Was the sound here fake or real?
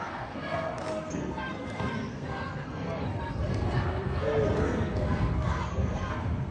fake